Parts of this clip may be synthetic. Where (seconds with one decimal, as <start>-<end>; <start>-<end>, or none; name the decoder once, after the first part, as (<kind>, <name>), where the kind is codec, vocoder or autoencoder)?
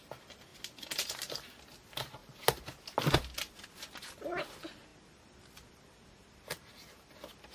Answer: none